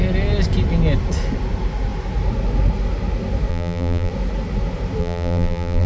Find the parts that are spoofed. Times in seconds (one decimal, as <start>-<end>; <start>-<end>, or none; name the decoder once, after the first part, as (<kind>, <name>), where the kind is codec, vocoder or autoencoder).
3.5-4.1 (vocoder, BigVGAN v2); 5.0-5.9